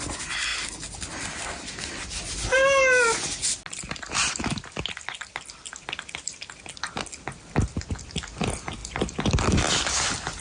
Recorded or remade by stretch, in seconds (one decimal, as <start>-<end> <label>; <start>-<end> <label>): 0.0-10.4 recorded